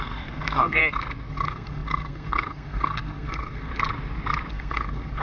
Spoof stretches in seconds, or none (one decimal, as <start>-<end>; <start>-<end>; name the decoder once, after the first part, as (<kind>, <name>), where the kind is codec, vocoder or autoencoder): 0.0-0.8 (codec, SNAC); 1.3-3.7; 4.5-5.2